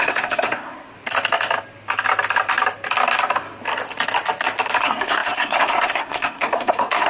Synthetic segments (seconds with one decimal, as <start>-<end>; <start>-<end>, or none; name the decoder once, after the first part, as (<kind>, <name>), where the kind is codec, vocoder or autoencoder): 0.0-0.9 (codec, SNAC); 4.8-7.1